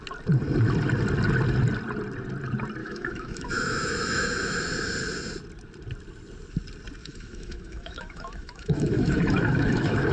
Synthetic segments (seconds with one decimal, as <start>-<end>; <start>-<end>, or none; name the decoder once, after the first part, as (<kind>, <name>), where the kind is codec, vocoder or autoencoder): 2.8-4.6 (autoencoder, DAC-VAE); 7.0-10.1